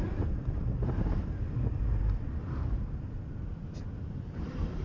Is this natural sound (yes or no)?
yes